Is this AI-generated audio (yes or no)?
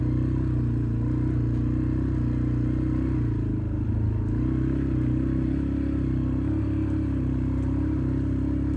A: no